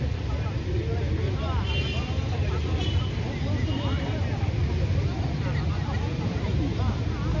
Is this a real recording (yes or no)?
yes